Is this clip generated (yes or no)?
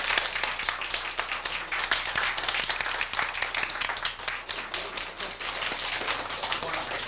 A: no